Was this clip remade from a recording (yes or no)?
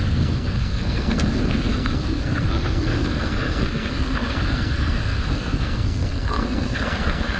yes